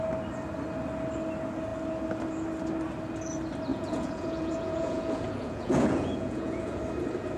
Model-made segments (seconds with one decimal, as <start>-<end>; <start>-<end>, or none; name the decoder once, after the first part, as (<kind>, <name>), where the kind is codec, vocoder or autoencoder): 3.7-6.8 (vocoder, Vocos)